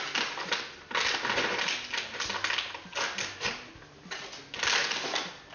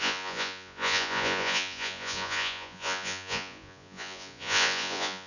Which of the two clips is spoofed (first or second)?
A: second